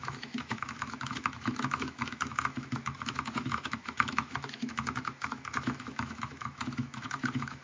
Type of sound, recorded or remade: remade